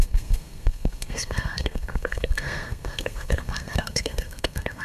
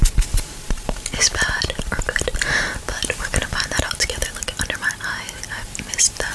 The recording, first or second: second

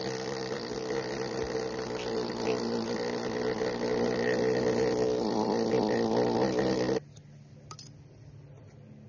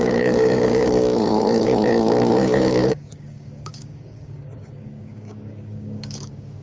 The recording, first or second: first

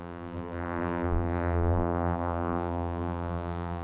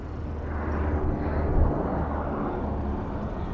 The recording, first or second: second